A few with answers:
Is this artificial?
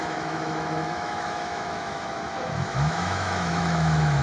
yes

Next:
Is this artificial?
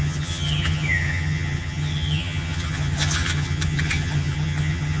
yes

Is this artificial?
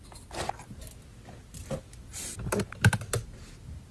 no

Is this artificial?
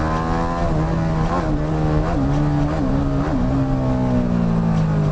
no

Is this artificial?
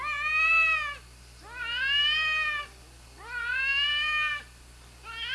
no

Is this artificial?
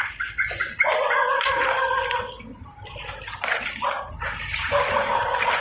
no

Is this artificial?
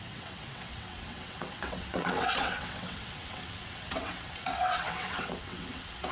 yes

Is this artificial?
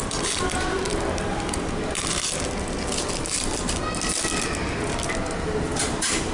no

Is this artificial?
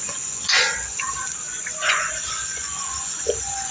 yes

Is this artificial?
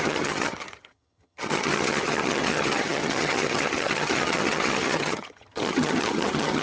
yes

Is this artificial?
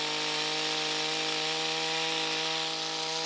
no